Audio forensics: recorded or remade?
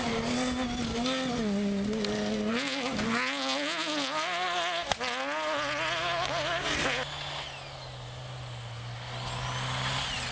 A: recorded